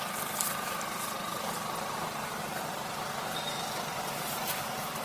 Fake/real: fake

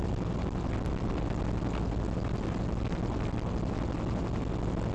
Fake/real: real